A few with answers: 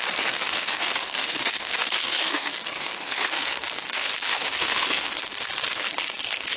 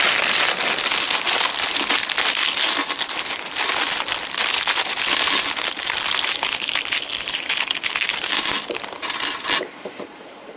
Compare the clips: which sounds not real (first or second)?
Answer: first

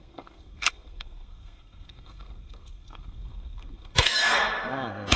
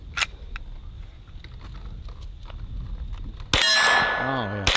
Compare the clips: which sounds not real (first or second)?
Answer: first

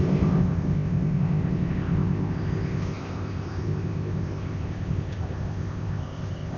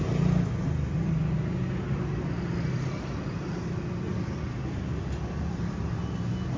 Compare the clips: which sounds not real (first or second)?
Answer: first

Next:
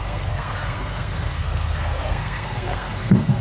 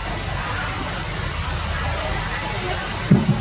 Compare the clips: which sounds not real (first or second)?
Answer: first